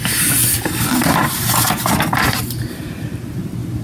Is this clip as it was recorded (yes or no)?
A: no